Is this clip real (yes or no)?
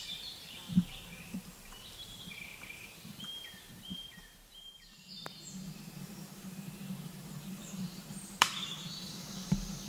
no